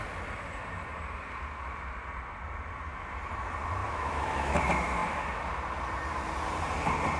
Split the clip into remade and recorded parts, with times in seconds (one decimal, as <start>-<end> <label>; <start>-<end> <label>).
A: 0.0-3.8 recorded; 3.8-4.6 remade; 4.6-7.2 recorded